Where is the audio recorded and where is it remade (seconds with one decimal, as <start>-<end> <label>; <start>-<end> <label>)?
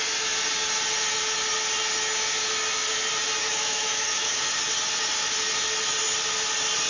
0.0-3.4 recorded; 3.4-4.4 remade; 4.4-6.9 recorded